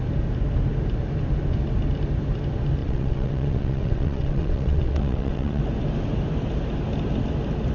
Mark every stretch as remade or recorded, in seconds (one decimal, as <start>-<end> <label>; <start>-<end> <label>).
0.0-2.8 recorded; 2.8-5.6 remade; 5.6-7.7 recorded